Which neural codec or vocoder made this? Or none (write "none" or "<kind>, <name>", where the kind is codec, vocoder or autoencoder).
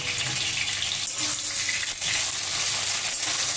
none